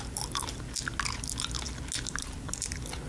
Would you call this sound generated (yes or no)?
no